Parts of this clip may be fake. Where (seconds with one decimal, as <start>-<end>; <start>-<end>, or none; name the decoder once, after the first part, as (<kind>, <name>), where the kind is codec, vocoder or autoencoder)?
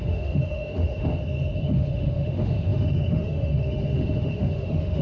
0.0-1.1 (autoencoder, DAC-VAE); 1.6-5.0